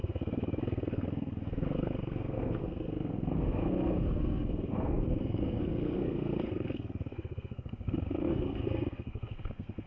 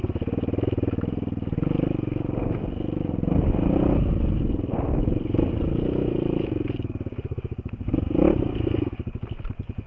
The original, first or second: second